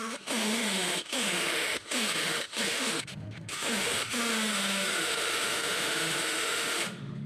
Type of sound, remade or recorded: remade